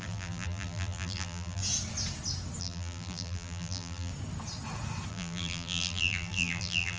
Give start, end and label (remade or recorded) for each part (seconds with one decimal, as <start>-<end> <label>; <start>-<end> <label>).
0.0-1.6 remade; 1.6-2.6 recorded; 2.6-4.1 remade; 4.1-5.1 recorded; 5.1-7.0 remade